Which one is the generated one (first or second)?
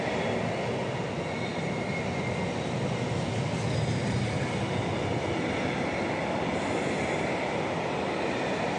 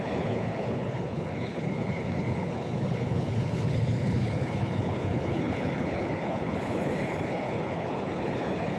second